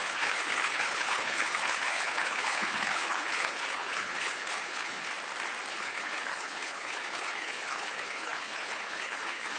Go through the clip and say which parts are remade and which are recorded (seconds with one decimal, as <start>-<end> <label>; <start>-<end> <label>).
0.0-5.1 remade; 5.1-5.7 recorded; 5.7-9.6 remade